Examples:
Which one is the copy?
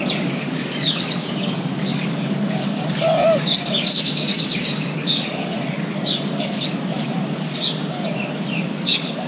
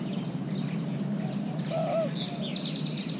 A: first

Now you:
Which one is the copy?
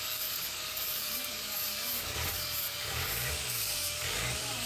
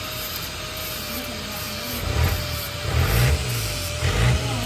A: first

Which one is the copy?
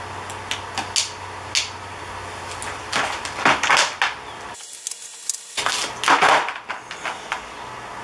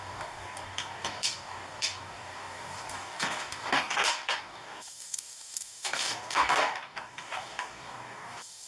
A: second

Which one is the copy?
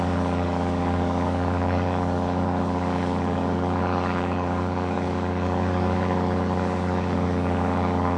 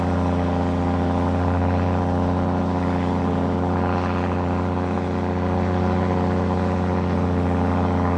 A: first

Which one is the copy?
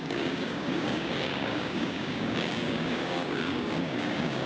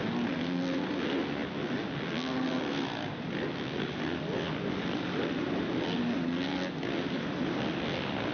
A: first